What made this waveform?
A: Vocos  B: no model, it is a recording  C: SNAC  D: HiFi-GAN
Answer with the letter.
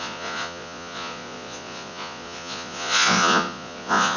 A